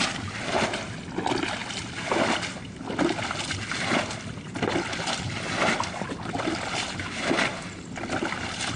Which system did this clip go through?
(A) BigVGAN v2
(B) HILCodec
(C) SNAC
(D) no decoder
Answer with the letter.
D